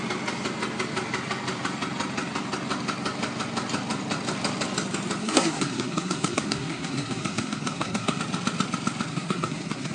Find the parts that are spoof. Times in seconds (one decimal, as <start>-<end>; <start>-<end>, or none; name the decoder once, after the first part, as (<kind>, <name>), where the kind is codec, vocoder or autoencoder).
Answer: 5.2-8.2 (codec, SNAC); 9.1-9.9